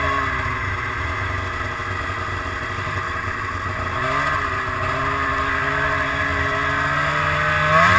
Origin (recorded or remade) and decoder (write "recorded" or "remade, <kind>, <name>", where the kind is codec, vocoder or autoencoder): recorded